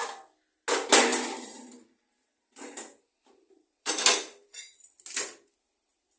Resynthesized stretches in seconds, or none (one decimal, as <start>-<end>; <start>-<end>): 1.1-3.9